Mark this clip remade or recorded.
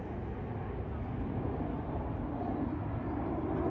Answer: recorded